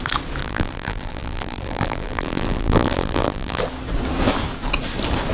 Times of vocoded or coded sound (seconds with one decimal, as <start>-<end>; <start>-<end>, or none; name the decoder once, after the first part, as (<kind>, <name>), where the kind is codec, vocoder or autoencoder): 0.4-3.6 (vocoder, BigVGAN v2)